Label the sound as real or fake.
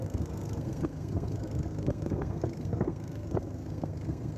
fake